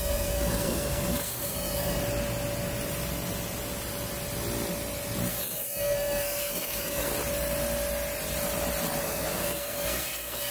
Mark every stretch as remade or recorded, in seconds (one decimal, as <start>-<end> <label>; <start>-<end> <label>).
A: 0.0-2.0 remade; 2.0-5.3 recorded; 5.3-7.1 remade; 7.1-9.0 recorded; 9.0-10.5 remade

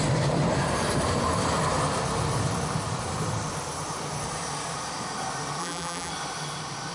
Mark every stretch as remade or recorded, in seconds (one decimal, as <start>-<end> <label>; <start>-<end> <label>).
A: 0.0-5.6 recorded; 5.6-6.1 remade; 6.1-6.9 recorded

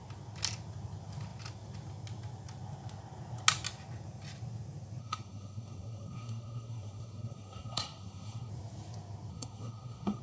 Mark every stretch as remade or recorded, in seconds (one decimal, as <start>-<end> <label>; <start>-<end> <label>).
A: 0.0-5.0 recorded; 5.0-8.5 remade; 8.5-9.3 recorded; 9.3-10.2 remade